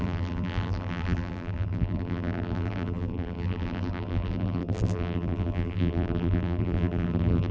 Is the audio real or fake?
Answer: fake